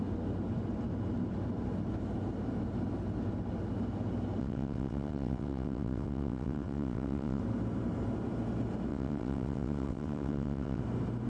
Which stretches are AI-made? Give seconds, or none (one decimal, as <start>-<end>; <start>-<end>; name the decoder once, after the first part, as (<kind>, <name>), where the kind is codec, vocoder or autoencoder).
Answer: 4.4-7.4 (vocoder, WaveNeXt); 8.9-10.8